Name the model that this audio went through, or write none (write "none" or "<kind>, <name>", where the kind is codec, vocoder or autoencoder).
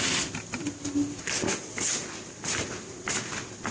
none